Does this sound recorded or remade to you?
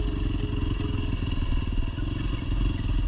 recorded